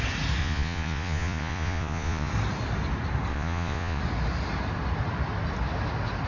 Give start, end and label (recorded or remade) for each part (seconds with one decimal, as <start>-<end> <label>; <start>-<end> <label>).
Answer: 0.0-0.4 recorded; 0.4-2.3 remade; 2.3-3.3 recorded; 3.3-4.0 remade; 4.0-6.3 recorded